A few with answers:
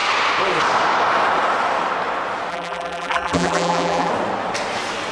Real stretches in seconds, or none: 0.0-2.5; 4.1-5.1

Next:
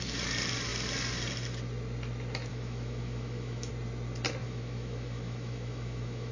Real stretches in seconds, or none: 0.0-2.5; 3.7-4.4

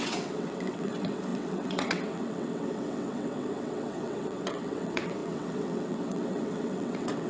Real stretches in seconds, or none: none

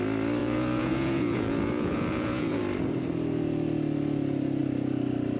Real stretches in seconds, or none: 0.0-0.4; 2.6-5.4